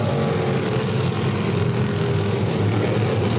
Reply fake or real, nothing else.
real